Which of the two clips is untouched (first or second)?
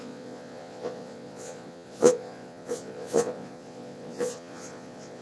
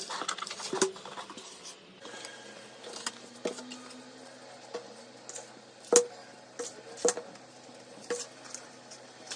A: second